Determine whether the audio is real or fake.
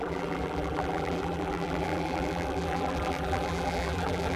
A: fake